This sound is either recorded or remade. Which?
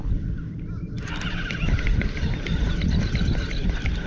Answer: remade